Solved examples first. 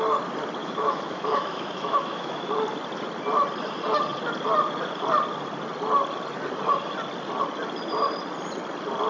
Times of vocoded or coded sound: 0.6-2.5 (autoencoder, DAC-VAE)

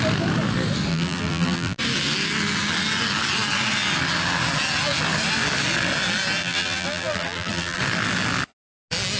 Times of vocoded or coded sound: 0.9-1.8 (vocoder, BigVGAN v2); 6.4-7.8

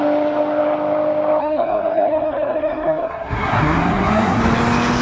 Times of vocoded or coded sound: 1.4-4.4 (codec, SNAC)